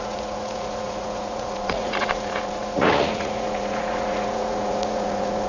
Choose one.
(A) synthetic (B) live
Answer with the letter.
A